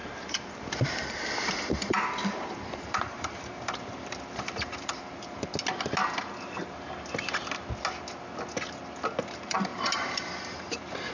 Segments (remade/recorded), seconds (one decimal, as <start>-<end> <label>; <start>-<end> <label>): 0.0-5.5 remade; 5.5-9.2 recorded; 9.2-11.1 remade